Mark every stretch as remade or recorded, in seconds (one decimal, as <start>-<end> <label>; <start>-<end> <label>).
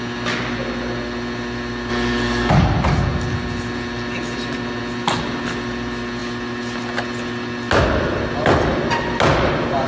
0.0-1.9 recorded; 1.9-2.5 remade; 2.5-9.9 recorded